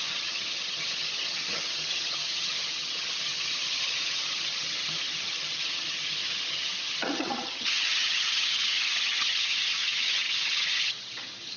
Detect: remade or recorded remade